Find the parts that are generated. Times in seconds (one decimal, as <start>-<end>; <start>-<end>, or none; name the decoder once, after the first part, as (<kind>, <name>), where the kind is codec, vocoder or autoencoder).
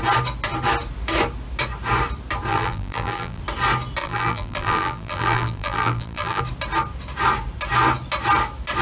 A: 2.5-3.4 (vocoder, BigVGAN v2); 4.0-6.4